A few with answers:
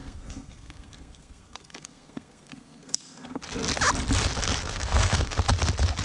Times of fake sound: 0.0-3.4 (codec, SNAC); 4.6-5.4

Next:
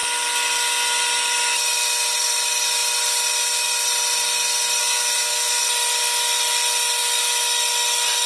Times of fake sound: 4.8-5.6 (codec, SNAC)

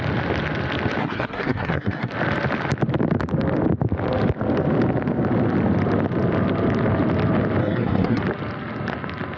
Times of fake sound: 1.0-2.1 (codec, SNAC); 7.6-8.2

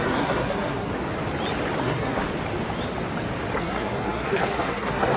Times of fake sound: 0.0-0.9 (codec, SNAC); 1.8-2.3; 3.6-5.2

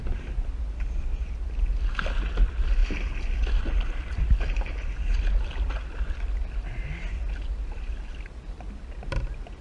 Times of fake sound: none

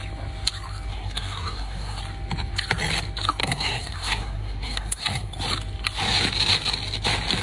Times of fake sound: 0.9-2.0 (codec, SNAC); 3.4-5.3

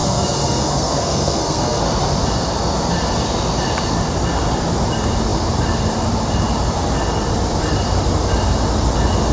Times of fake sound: 0.0-1.8 (codec, SNAC)

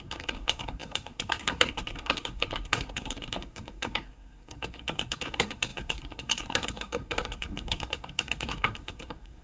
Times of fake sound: 0.0-9.4 (codec, SNAC)